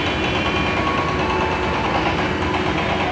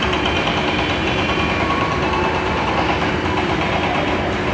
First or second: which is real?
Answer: first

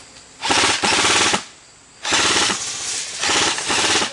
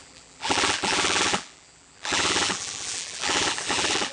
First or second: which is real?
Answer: first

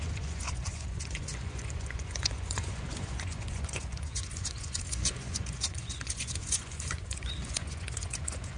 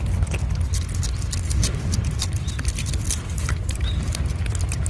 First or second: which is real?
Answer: second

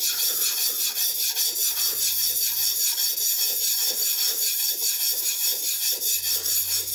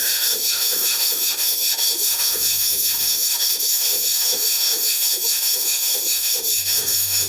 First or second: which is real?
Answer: first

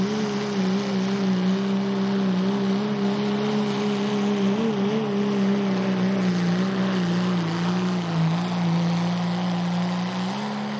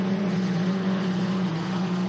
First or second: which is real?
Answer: first